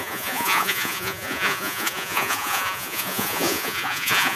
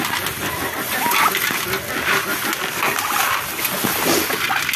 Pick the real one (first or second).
second